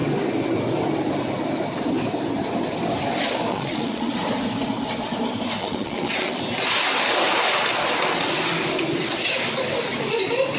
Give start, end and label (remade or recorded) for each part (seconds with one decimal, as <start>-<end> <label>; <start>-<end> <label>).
0.0-3.5 recorded; 3.5-4.1 remade; 4.1-5.6 recorded; 5.6-6.4 remade; 6.4-10.6 recorded